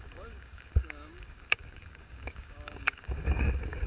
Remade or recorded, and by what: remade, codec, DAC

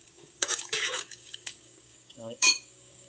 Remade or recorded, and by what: remade, codec, DAC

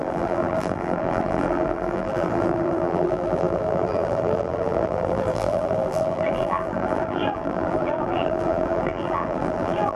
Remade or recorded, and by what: remade, vocoder, BigVGAN v2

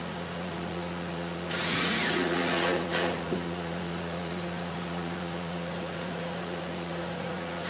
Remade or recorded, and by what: remade, vocoder, Vocos